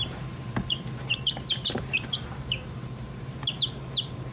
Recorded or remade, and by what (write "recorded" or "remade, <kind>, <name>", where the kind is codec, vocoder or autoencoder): remade, vocoder, BigVGAN v2